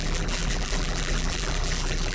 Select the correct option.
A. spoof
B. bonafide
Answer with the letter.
A